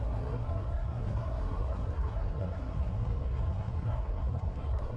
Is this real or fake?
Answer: fake